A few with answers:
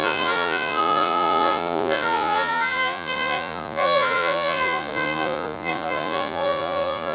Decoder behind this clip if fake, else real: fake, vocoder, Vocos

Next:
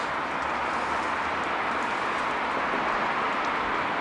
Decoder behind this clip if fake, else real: real